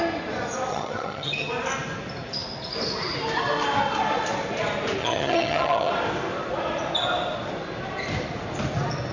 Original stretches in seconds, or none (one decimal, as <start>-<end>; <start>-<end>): 0.0-0.7; 1.5-5.0; 5.9-9.1